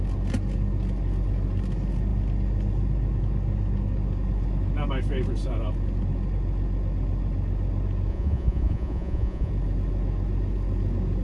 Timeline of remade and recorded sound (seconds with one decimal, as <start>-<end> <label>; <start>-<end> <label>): 0.0-8.1 recorded; 8.1-9.5 remade; 9.5-11.2 recorded